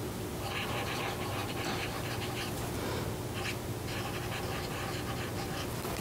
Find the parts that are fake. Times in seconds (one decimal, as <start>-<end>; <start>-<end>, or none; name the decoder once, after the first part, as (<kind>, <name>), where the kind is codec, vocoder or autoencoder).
none